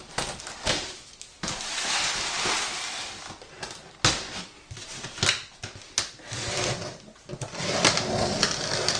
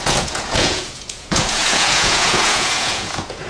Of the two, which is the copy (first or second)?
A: second